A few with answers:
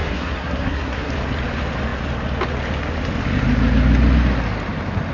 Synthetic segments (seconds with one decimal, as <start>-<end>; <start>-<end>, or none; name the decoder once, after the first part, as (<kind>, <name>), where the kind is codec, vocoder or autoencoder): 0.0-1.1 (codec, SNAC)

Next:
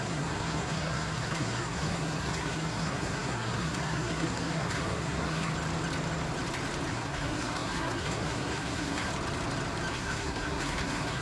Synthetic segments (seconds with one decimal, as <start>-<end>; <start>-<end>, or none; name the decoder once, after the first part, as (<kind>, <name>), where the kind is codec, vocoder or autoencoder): 0.0-5.5 (codec, SNAC); 6.9-9.1; 9.9-11.2

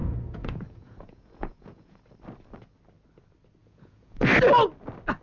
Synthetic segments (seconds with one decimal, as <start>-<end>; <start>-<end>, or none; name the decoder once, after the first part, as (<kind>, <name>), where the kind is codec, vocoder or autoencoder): 0.0-2.0 (vocoder, Vocos); 3.6-4.3

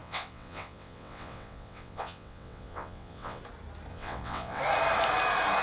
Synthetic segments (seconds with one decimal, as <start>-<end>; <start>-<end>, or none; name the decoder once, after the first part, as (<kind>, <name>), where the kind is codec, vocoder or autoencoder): 0.0-3.4 (vocoder, WaveNeXt); 3.9-4.6

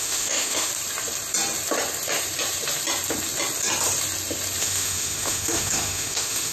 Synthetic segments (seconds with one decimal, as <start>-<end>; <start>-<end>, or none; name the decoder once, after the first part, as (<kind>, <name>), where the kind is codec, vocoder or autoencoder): 0.0-0.7 (autoencoder, DAC-VAE); 4.6-6.5

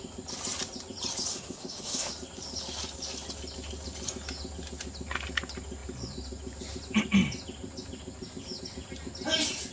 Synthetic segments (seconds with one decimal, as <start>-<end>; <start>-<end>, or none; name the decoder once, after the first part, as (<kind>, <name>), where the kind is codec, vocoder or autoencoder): 1.3-2.1 (autoencoder, DAC-VAE)

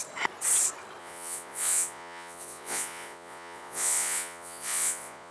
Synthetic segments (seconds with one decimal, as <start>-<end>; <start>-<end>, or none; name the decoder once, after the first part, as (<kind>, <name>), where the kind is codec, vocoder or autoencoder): 1.0-5.3 (vocoder, Vocos)

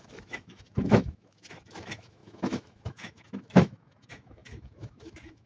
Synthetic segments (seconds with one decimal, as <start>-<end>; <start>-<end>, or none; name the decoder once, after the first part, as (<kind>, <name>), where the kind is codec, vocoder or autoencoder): 0.0-5.5 (autoencoder, DAC-VAE)